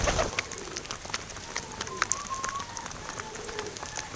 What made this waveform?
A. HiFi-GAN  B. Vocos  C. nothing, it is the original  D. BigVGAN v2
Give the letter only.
C